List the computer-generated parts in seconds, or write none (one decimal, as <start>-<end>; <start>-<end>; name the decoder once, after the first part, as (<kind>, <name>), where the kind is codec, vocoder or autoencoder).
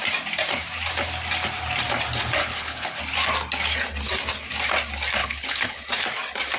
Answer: 2.4-3.0 (codec, HILCodec); 5.2-5.8